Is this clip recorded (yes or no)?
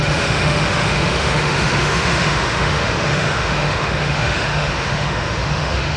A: no